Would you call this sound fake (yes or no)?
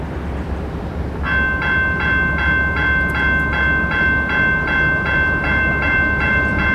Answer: no